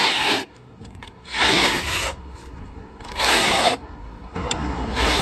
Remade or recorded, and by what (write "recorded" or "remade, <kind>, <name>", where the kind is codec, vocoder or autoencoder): remade, codec, SNAC